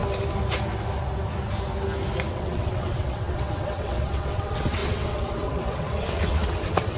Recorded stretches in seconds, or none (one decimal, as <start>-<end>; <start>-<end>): 0.0-2.3